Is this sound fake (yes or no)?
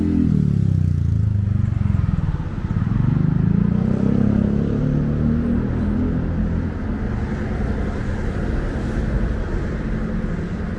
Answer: no